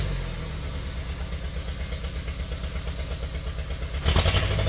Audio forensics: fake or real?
real